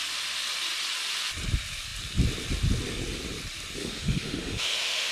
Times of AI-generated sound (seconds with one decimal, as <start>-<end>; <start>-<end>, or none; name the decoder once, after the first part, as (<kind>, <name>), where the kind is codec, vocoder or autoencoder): 3.8-5.1 (autoencoder, DAC-VAE)